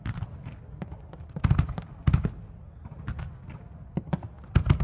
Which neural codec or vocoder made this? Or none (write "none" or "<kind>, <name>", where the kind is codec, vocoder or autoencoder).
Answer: none